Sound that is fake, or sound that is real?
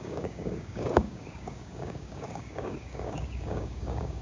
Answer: fake